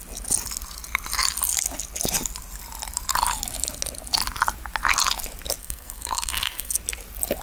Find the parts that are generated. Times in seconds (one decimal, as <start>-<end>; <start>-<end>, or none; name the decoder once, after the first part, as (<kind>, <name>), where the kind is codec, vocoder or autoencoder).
5.6-6.8 (codec, SNAC)